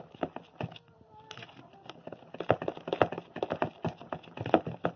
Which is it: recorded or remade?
recorded